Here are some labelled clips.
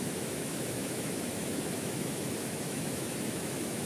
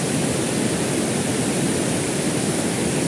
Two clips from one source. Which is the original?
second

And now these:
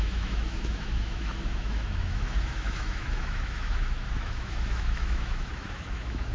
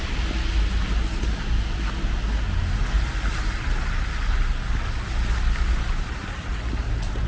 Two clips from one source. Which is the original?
second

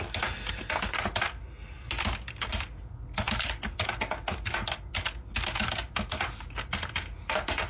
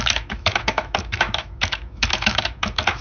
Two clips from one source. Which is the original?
first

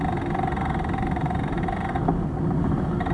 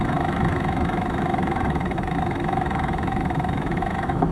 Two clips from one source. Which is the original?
first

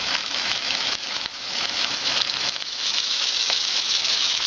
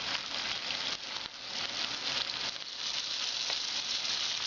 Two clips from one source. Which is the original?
second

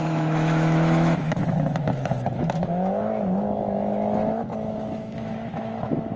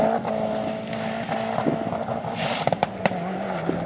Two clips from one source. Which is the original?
second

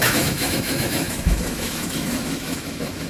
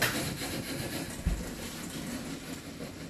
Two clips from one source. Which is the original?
second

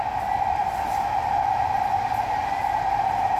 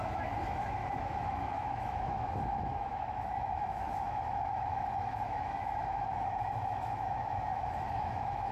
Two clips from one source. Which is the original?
first